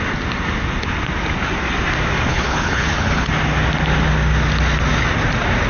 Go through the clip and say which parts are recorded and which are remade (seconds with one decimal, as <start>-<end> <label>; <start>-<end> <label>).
0.0-2.3 recorded; 2.3-3.3 remade; 3.3-5.7 recorded